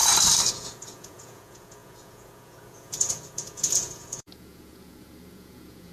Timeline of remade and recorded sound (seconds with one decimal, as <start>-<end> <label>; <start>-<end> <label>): 0.0-0.5 recorded; 0.5-5.9 remade